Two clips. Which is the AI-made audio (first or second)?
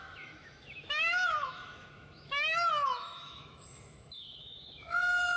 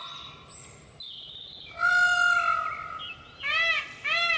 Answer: first